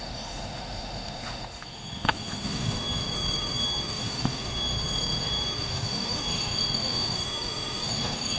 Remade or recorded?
remade